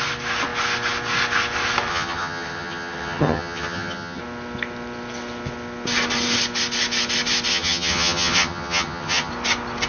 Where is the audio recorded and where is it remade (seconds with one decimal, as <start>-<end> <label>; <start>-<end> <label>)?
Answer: 0.0-1.9 recorded; 1.9-4.2 remade; 4.2-7.5 recorded; 7.5-9.3 remade; 9.3-9.9 recorded

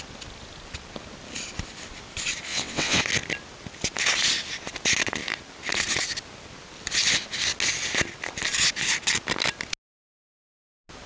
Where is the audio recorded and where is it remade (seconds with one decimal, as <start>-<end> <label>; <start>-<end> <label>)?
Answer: 0.0-2.5 recorded; 2.5-3.0 remade; 3.0-11.1 recorded

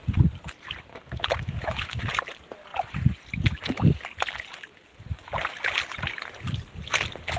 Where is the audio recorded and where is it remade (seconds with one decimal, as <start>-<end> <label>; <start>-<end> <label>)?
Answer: 0.0-0.9 recorded; 0.9-2.0 remade; 2.0-7.4 recorded

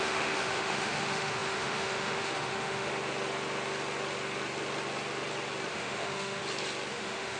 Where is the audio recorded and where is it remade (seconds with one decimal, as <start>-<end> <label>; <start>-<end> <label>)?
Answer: 0.0-2.9 remade; 2.9-5.7 recorded; 5.7-6.4 remade; 6.4-6.9 recorded; 6.9-7.4 remade

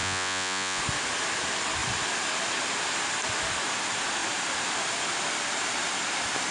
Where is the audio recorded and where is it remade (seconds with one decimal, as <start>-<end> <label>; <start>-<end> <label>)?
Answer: 0.0-0.8 remade; 0.8-6.5 recorded

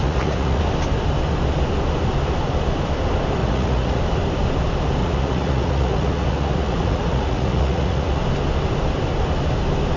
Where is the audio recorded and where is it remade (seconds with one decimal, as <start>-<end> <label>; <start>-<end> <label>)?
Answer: 0.0-0.6 remade; 0.6-3.4 recorded; 3.4-4.0 remade; 4.0-5.0 recorded; 5.0-8.2 remade; 8.2-10.0 recorded

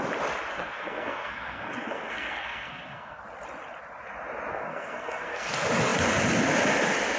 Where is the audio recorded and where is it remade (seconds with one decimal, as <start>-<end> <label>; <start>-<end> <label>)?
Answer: 0.0-0.5 recorded; 0.5-3.2 remade; 3.2-4.5 recorded; 4.5-5.5 remade; 5.5-7.2 recorded

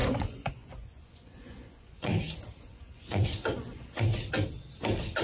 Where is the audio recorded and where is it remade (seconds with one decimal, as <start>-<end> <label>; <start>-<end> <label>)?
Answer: 0.0-2.1 remade; 2.1-2.6 recorded; 2.6-4.1 remade; 4.1-5.2 recorded